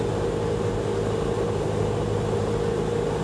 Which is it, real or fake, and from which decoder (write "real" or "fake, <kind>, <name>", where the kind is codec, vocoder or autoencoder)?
real